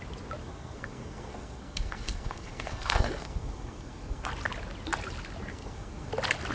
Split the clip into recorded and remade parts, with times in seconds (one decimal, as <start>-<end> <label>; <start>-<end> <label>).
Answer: 0.0-0.4 recorded; 0.4-4.3 remade; 4.3-5.5 recorded; 5.5-6.1 remade; 6.1-6.5 recorded

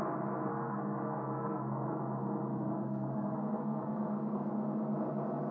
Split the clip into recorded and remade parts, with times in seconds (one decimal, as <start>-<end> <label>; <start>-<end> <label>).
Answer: 0.0-0.5 recorded; 0.5-2.0 remade; 2.0-2.5 recorded; 2.5-4.5 remade; 4.5-5.5 recorded

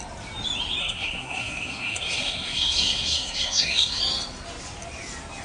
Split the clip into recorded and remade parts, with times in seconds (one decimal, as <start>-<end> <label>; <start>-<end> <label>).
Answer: 0.0-0.8 recorded; 0.8-4.0 remade; 4.0-5.4 recorded

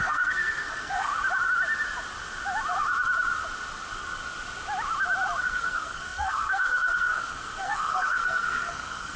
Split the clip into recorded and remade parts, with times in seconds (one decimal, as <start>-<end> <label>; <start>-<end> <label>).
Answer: 0.0-1.1 remade; 1.1-5.4 recorded; 5.4-9.2 remade

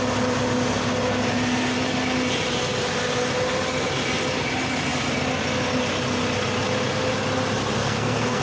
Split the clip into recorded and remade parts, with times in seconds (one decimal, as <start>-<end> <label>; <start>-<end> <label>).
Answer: 0.0-7.8 recorded; 7.8-8.4 remade

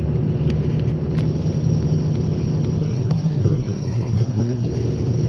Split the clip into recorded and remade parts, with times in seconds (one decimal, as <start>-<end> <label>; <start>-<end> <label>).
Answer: 0.0-2.8 recorded; 2.8-4.7 remade; 4.7-5.3 recorded